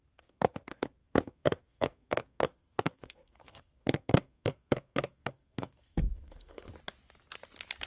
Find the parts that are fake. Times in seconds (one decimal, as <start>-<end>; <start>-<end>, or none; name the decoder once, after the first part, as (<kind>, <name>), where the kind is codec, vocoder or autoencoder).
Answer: 0.0-6.7 (codec, SNAC)